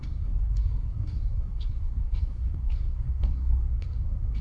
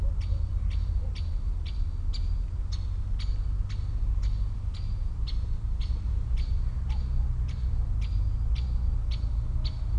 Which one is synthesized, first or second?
first